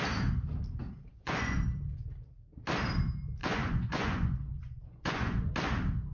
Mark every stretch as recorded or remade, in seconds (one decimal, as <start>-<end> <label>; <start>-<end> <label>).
0.0-1.1 recorded; 1.1-1.6 remade; 1.6-3.4 recorded; 3.4-5.5 remade; 5.5-6.1 recorded